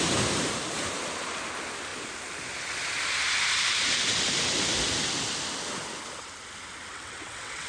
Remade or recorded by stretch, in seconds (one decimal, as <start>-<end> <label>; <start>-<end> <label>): 0.0-6.9 recorded; 6.9-7.7 remade

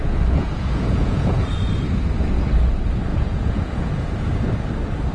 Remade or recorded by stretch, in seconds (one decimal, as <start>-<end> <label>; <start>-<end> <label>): 0.0-1.5 remade; 1.5-3.1 recorded; 3.1-4.3 remade; 4.3-5.1 recorded